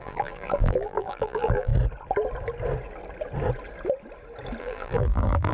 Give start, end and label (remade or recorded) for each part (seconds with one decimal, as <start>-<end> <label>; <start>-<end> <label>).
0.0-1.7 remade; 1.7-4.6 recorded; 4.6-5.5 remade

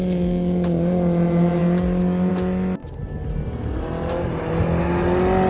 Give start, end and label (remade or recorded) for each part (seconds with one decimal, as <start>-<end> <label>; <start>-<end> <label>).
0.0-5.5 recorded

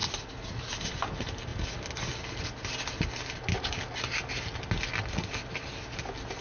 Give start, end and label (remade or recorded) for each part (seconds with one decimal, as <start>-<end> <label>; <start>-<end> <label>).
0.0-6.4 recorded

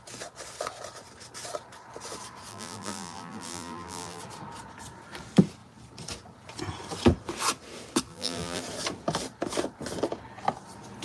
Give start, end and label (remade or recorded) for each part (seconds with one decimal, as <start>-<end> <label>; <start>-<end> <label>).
0.0-2.5 recorded; 2.5-4.2 remade; 4.2-8.1 recorded; 8.1-8.6 remade; 8.6-11.0 recorded

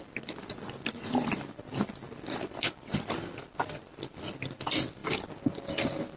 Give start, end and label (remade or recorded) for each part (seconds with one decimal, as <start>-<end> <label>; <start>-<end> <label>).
0.0-5.0 remade; 5.0-6.2 recorded

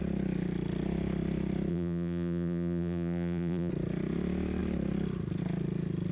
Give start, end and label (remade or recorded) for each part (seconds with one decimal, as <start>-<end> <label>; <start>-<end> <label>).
0.0-1.7 recorded; 1.7-3.7 remade; 3.7-6.1 recorded

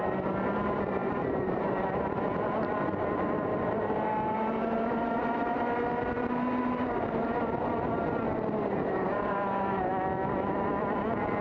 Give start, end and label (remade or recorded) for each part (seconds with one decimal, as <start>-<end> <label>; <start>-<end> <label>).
0.0-9.9 remade; 9.9-11.4 recorded

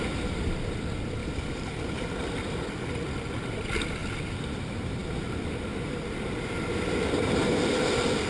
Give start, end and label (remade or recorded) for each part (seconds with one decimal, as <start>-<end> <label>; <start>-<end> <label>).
0.0-1.2 recorded; 1.2-2.9 remade; 2.9-8.3 recorded